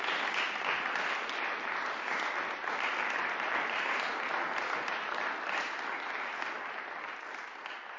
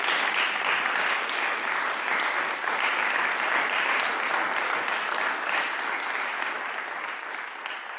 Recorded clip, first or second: first